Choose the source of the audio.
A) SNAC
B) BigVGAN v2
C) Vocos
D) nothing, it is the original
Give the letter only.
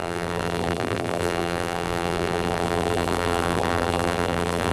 B